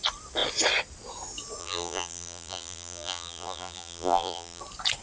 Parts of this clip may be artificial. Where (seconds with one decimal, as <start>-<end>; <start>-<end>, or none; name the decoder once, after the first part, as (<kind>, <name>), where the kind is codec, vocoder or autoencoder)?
1.6-4.6 (vocoder, BigVGAN v2)